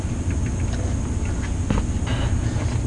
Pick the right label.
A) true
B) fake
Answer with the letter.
A